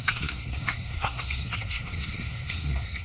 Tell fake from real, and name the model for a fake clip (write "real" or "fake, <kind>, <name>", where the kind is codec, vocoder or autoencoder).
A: fake, codec, SNAC